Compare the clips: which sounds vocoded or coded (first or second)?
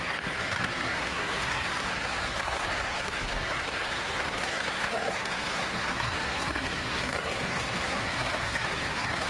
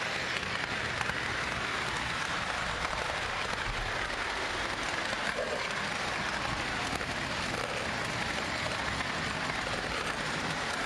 first